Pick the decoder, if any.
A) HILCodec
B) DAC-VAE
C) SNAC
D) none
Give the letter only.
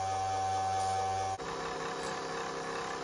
D